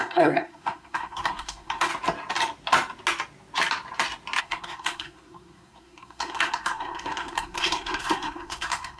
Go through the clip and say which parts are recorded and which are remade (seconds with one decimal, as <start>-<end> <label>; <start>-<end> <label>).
0.0-1.9 remade; 1.9-4.4 recorded; 4.4-9.0 remade